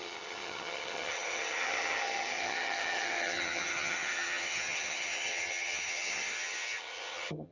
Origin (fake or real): fake